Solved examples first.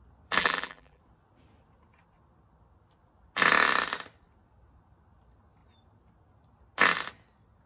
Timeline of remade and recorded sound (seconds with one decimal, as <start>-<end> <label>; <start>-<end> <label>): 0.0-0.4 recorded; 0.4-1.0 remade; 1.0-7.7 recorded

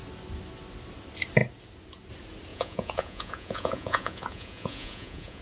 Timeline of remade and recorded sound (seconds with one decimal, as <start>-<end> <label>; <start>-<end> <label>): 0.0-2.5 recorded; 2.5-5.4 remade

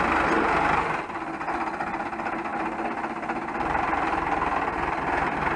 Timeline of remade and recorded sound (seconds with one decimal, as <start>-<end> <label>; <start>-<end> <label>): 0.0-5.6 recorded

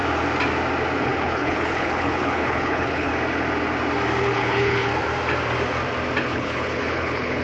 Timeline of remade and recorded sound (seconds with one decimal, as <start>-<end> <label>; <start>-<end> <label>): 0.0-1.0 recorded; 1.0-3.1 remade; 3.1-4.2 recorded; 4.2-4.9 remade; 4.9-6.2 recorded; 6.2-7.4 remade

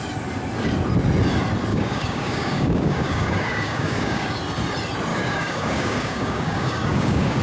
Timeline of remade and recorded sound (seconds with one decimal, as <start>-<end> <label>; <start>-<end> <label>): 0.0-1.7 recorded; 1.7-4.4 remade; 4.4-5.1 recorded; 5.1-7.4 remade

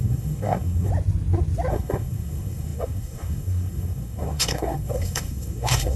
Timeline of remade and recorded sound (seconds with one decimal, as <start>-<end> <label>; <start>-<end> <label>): 0.0-0.9 remade; 0.9-1.7 recorded; 1.7-6.0 remade